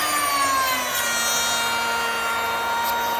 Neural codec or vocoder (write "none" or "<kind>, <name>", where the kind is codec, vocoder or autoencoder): none